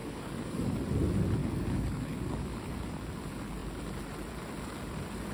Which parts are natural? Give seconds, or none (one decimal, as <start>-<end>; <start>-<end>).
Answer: 0.8-1.4; 2.7-5.3